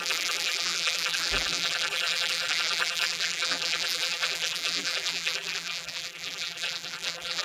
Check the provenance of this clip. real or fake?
fake